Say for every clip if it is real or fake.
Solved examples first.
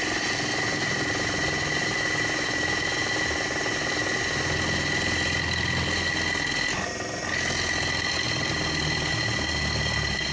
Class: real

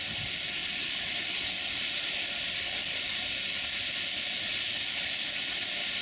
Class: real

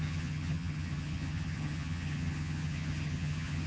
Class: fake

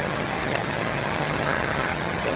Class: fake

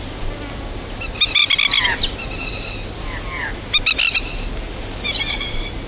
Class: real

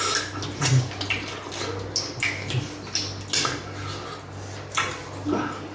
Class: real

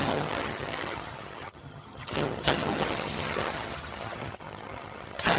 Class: fake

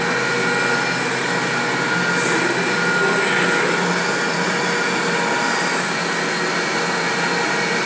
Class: real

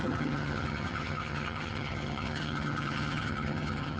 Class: fake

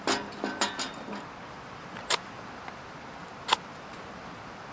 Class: real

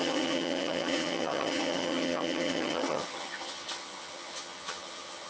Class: fake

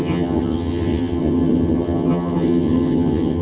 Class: fake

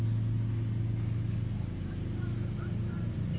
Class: real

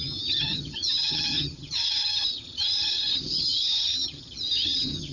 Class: fake